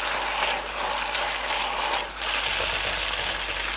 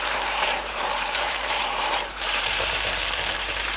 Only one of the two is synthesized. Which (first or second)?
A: second